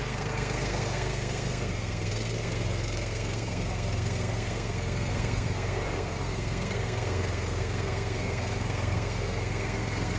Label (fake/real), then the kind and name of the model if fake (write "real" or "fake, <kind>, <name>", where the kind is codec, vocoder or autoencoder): fake, codec, SNAC